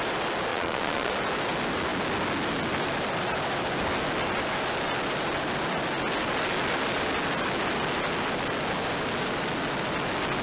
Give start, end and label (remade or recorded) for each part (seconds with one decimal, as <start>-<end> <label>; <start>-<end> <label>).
0.0-0.5 recorded; 0.5-1.1 remade; 1.1-10.4 recorded